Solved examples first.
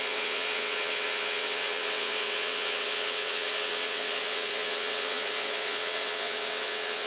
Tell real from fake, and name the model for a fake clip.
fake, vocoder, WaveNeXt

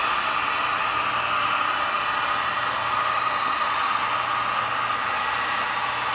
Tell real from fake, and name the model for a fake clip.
real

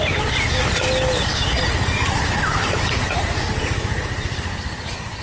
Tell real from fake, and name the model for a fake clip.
real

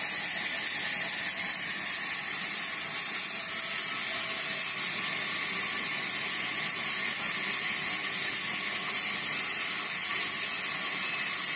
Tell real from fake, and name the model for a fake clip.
real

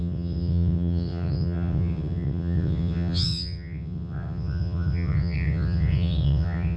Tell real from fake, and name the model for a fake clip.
fake, vocoder, WaveNeXt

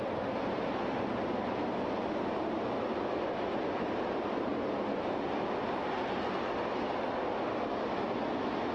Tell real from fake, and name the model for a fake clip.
real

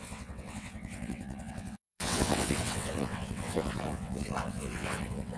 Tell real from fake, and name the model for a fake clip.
fake, vocoder, WaveNeXt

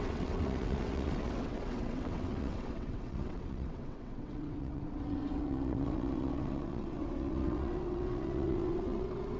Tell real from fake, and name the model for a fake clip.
fake, vocoder, WaveNeXt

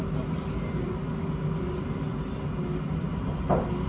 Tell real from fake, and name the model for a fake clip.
real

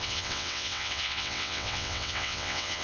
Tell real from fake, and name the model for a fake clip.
fake, vocoder, WaveNeXt